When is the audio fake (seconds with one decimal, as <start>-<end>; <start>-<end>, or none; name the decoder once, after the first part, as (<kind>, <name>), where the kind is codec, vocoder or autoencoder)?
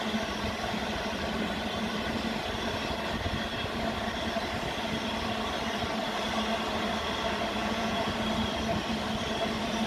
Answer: 7.6-8.1 (vocoder, Vocos)